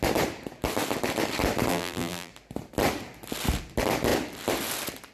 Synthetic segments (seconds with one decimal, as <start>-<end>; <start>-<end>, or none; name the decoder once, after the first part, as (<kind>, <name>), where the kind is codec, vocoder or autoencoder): 1.7-2.3 (vocoder, BigVGAN v2)